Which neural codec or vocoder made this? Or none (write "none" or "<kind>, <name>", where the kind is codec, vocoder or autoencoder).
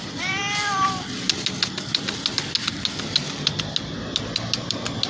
none